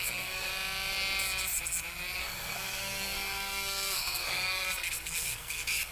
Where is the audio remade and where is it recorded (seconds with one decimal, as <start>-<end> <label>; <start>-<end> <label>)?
0.0-0.5 remade; 0.5-2.2 recorded; 2.2-5.9 remade